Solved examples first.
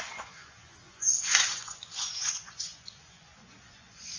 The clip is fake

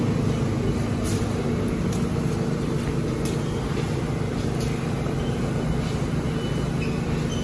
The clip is real